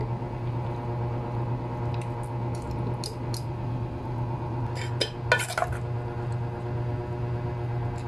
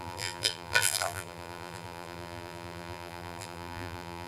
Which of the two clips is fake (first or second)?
second